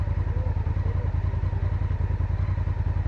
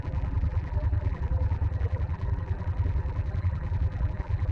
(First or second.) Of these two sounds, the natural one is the first